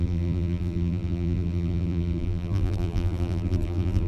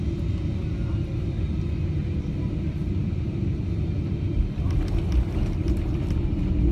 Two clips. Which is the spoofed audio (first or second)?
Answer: first